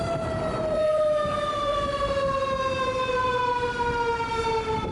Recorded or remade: remade